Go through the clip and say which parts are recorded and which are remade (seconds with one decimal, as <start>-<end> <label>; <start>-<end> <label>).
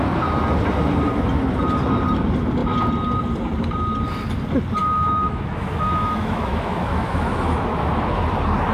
0.0-4.8 recorded; 4.8-7.9 remade; 7.9-8.7 recorded